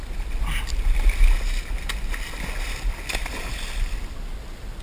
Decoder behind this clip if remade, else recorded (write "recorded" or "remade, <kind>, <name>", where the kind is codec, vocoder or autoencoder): recorded